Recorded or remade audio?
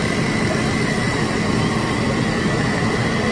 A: remade